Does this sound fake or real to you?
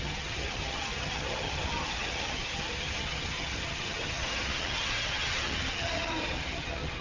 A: fake